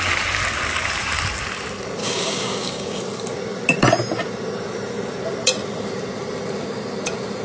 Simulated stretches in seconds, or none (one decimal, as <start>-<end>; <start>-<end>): 2.0-3.0

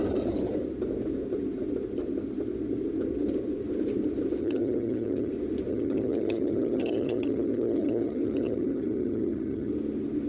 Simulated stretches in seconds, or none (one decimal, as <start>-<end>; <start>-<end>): 4.4-5.3; 5.7-9.7

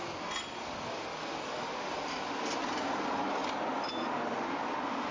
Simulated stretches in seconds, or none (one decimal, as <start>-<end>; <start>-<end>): none

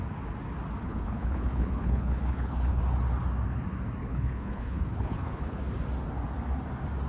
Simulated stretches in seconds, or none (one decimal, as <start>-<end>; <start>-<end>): 0.8-2.8; 4.0-5.6

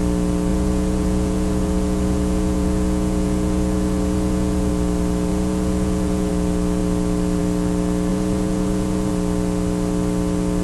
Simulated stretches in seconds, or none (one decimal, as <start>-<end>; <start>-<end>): 0.5-4.7; 5.3-6.3; 8.1-9.1

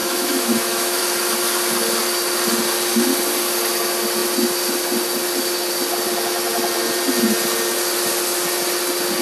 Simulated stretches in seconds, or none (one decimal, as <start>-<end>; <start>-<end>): 0.0-1.0